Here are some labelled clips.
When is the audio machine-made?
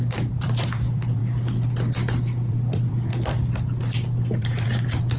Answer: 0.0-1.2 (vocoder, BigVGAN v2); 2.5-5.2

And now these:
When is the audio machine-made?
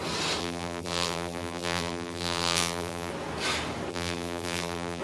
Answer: 0.4-3.1 (vocoder, BigVGAN v2); 3.9-5.0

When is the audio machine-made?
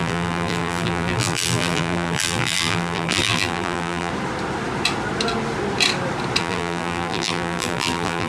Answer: 0.0-4.1 (vocoder, BigVGAN v2); 6.4-8.3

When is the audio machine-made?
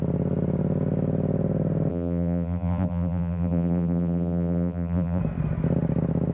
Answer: 1.9-5.2 (vocoder, BigVGAN v2)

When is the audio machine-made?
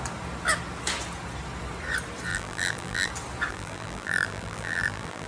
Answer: 2.3-3.1 (vocoder, BigVGAN v2); 3.5-5.3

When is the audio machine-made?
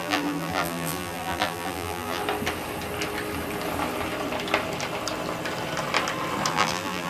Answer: 0.0-2.2 (vocoder, BigVGAN v2); 6.5-7.1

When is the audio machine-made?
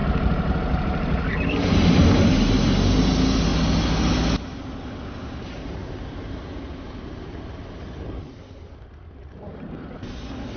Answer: 0.0-2.3 (vocoder, BigVGAN v2); 5.2-7.6